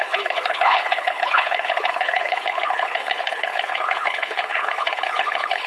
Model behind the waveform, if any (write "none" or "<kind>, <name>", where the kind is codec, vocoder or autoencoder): codec, HILCodec